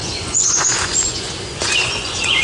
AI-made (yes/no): yes